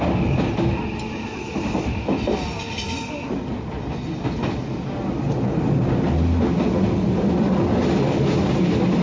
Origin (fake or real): real